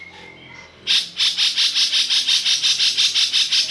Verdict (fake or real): real